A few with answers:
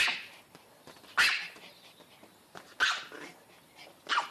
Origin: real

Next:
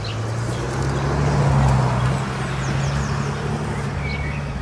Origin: real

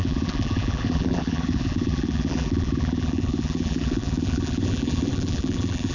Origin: fake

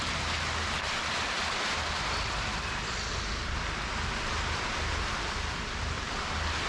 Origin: real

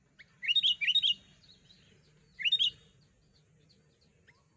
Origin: real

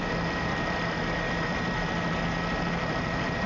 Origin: fake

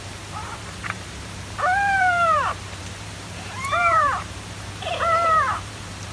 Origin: fake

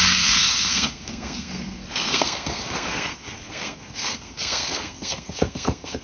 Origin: fake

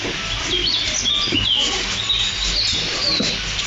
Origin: real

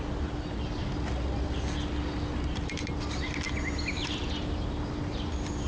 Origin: real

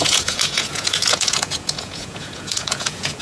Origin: fake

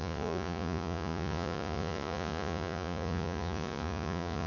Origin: fake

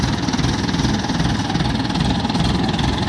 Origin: real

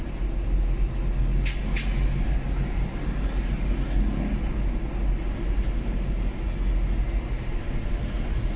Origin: real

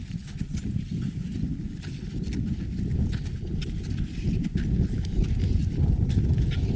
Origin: real